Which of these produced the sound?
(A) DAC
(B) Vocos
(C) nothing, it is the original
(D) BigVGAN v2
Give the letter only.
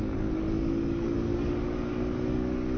A